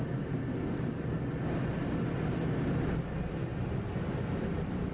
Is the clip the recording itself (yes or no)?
yes